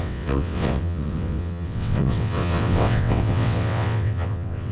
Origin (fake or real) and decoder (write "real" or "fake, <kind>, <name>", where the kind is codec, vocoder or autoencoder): fake, vocoder, WaveNeXt